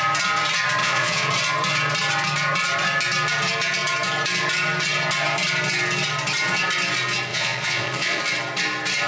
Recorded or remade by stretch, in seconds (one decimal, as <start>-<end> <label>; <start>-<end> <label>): 0.0-0.8 recorded; 0.8-1.3 remade; 1.3-7.3 recorded; 7.3-8.2 remade; 8.2-9.1 recorded